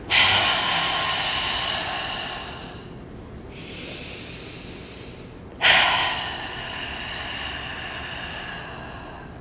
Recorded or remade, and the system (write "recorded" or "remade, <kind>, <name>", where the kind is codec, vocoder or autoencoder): recorded